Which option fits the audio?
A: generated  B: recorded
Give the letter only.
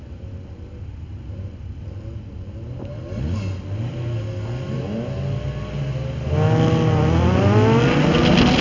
B